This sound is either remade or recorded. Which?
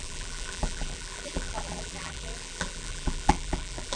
remade